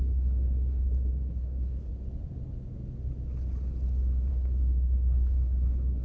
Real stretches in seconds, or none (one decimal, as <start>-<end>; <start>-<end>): 1.9-4.3